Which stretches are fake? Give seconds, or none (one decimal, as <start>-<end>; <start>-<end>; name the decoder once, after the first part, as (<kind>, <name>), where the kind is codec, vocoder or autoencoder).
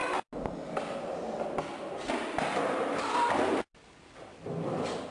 none